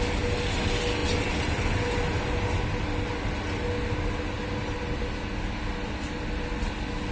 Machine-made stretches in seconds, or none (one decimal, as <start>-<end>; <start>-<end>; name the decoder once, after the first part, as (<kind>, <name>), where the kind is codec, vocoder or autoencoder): none